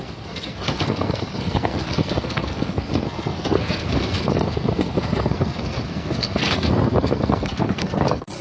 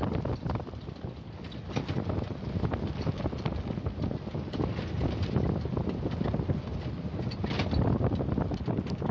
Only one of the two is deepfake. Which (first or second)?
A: first